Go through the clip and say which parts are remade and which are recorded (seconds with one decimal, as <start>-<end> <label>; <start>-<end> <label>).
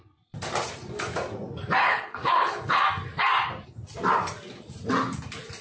0.0-1.8 recorded; 1.8-2.8 remade; 2.8-5.6 recorded